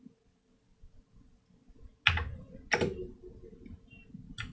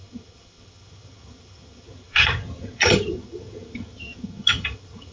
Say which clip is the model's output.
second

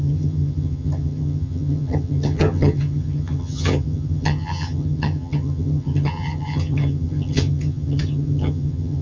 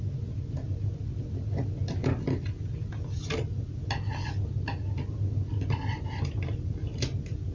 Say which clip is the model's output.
first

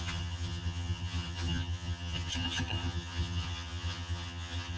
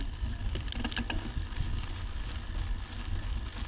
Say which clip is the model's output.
first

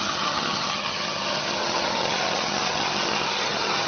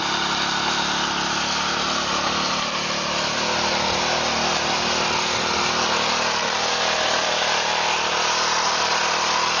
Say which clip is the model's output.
first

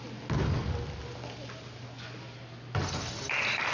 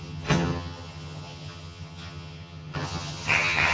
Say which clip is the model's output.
second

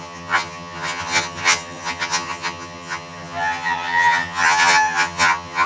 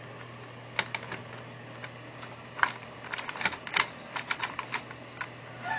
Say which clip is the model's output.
first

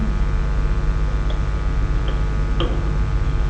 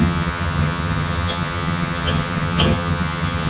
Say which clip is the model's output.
second